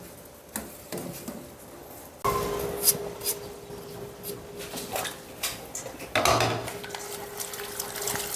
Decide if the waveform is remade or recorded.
recorded